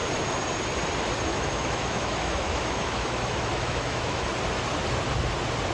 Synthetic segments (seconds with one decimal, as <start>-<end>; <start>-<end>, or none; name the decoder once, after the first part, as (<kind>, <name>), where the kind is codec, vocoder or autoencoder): 1.3-4.3 (autoencoder, DAC-VAE)